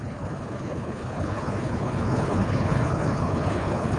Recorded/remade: remade